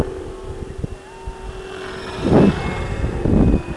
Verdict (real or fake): real